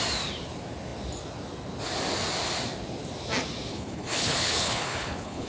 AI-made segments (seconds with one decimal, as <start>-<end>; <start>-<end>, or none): 3.7-5.5